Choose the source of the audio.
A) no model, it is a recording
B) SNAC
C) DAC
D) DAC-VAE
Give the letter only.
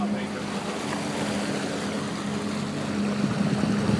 A